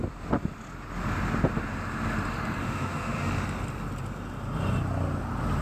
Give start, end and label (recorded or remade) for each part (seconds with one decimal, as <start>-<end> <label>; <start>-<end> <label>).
0.0-2.6 recorded; 2.6-3.3 remade; 3.3-5.6 recorded